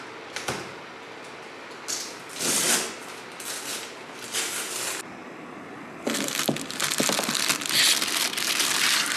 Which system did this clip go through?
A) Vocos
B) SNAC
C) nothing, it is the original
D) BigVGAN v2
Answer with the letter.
C